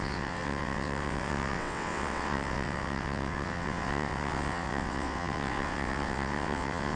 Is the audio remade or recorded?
remade